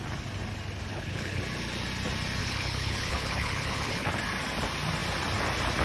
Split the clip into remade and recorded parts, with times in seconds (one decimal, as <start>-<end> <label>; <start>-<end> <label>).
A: 0.0-0.9 recorded; 0.9-1.4 remade; 1.4-2.4 recorded; 2.4-4.1 remade; 4.1-5.8 recorded